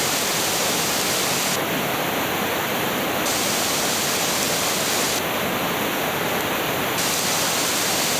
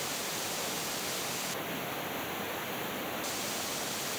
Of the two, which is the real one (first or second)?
second